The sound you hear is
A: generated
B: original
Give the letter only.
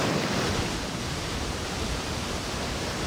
A